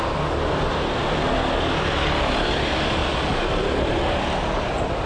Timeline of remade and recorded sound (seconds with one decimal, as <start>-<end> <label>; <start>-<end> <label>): 0.0-5.1 recorded